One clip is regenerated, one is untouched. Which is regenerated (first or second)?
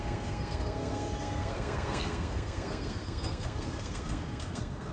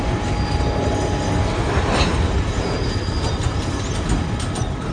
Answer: first